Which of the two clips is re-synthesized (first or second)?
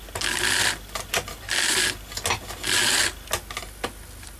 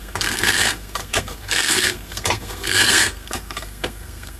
second